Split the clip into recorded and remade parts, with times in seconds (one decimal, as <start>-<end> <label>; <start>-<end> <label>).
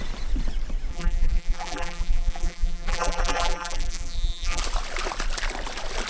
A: 0.0-0.9 recorded; 0.9-4.6 remade; 4.6-6.1 recorded